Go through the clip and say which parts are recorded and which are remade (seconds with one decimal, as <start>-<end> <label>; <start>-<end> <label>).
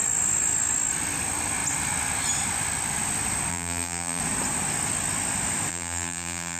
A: 0.0-3.5 recorded; 3.5-4.2 remade; 4.2-5.7 recorded; 5.7-6.6 remade